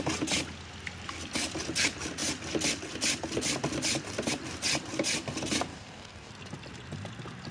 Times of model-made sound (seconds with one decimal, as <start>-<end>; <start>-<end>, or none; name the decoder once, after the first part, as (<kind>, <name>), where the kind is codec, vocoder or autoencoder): 5.7-6.3 (codec, DAC)